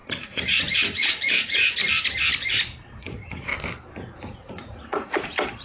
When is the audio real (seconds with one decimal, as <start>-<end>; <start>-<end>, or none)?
1.8-3.0; 3.5-4.2